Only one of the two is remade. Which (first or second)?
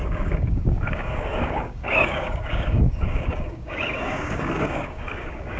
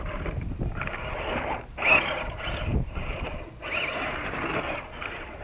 first